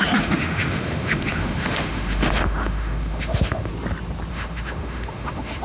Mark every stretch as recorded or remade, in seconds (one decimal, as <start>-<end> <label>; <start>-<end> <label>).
0.0-3.7 remade; 3.7-4.3 recorded; 4.3-5.6 remade